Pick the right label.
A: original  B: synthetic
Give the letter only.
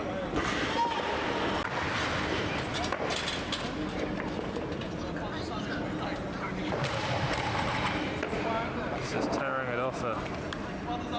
A